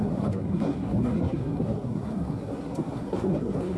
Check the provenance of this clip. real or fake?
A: fake